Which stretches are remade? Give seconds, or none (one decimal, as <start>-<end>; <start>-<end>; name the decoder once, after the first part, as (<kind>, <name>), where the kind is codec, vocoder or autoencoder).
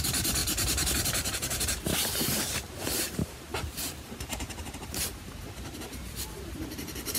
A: 0.0-7.2 (vocoder, BigVGAN v2)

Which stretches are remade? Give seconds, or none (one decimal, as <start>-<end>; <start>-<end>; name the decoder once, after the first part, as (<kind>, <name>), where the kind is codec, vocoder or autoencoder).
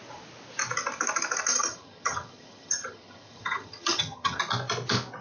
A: 1.5-4.4 (vocoder, HiFi-GAN)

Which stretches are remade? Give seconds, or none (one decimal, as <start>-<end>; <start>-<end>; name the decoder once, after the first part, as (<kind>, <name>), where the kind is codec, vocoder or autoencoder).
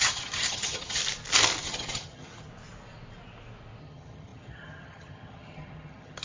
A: 0.0-1.0 (vocoder, HiFi-GAN); 1.6-2.5; 3.8-6.2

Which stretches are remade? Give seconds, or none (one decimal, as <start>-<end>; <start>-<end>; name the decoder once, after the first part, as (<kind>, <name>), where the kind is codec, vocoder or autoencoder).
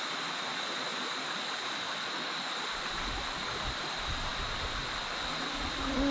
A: none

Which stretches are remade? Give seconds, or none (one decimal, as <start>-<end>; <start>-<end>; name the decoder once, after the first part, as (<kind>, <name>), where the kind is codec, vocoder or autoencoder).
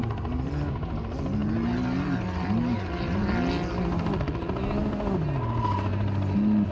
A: none